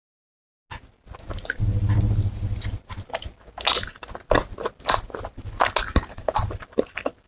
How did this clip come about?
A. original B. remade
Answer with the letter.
A